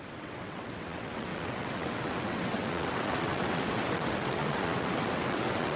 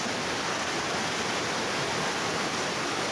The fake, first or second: first